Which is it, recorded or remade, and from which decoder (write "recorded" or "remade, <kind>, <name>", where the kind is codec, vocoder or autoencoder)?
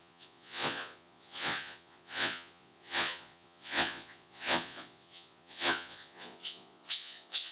remade, vocoder, Vocos